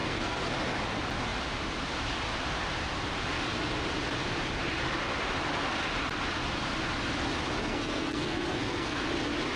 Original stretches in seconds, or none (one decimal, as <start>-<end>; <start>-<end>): 0.5-7.6; 9.0-9.6